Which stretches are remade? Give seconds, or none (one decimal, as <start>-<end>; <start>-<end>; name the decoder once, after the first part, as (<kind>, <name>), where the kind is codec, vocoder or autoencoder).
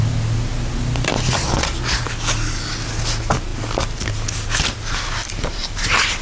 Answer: 5.2-6.2 (vocoder, BigVGAN v2)